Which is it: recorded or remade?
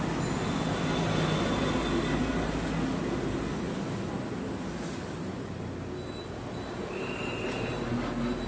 recorded